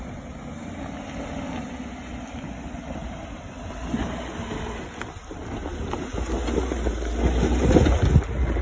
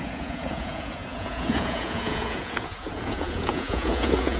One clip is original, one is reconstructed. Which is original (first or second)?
first